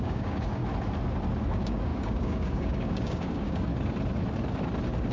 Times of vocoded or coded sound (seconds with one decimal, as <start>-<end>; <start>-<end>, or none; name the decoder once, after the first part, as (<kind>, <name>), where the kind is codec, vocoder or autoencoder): 0.0-0.6 (codec, DAC); 1.4-3.7